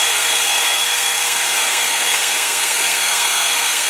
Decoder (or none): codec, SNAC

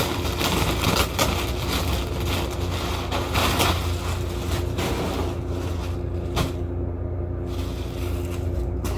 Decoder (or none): none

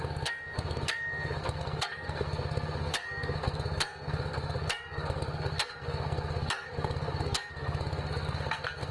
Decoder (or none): codec, SNAC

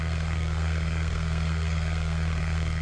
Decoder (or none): codec, SNAC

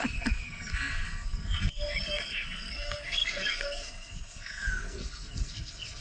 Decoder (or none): codec, SNAC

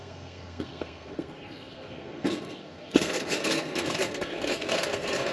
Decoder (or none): codec, SNAC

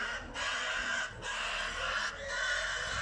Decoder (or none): none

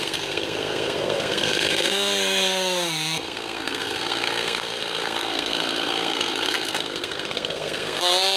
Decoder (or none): codec, SNAC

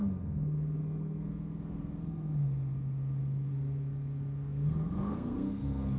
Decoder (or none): codec, SNAC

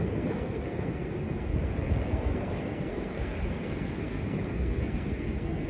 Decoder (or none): codec, SNAC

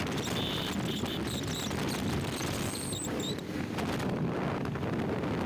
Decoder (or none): none